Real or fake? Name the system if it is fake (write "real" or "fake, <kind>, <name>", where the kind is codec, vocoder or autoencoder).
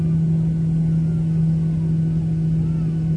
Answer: real